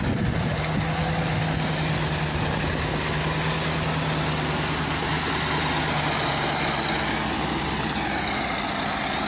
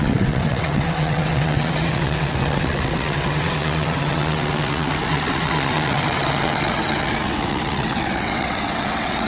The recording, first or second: first